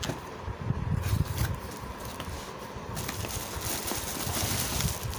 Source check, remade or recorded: recorded